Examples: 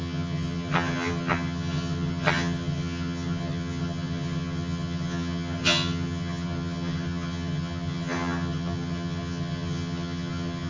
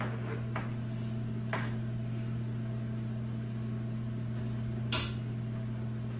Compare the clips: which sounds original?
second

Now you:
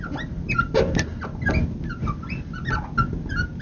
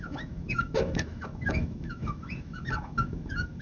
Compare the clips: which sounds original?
first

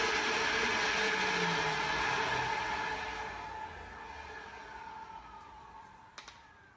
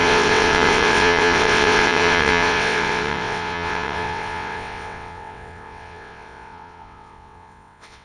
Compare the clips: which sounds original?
first